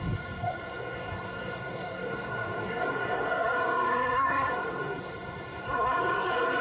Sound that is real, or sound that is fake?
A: fake